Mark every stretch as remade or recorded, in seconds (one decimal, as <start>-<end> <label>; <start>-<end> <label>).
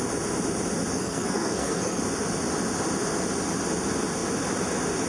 0.0-0.9 recorded; 0.9-2.0 remade; 2.0-5.1 recorded